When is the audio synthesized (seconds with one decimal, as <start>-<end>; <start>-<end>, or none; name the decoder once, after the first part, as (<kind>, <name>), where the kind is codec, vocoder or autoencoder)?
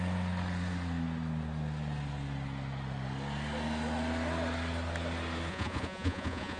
5.5-6.6 (vocoder, Vocos)